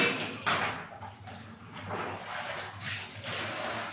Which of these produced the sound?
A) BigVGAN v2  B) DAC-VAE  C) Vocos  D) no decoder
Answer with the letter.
D